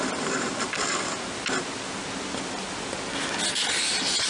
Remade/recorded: recorded